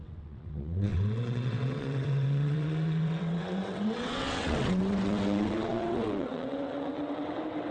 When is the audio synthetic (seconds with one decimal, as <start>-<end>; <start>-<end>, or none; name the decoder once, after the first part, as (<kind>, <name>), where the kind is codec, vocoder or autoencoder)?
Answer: 0.0-7.7 (vocoder, WaveNeXt)